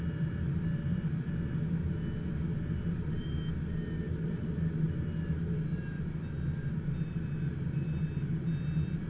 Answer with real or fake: real